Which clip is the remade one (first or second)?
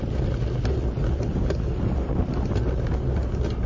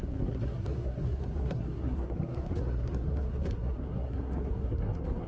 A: second